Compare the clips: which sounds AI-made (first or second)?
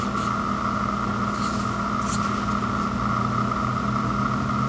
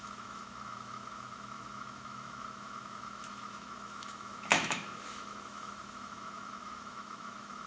second